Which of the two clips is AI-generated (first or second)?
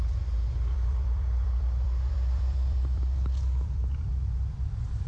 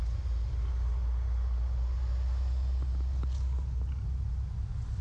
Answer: first